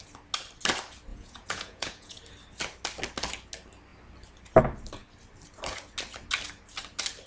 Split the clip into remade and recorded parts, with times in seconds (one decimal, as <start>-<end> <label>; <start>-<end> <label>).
0.0-1.1 recorded; 1.1-2.2 remade; 2.2-7.3 recorded